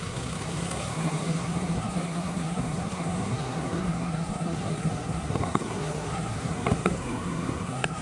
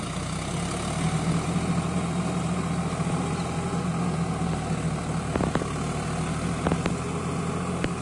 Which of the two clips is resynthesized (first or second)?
first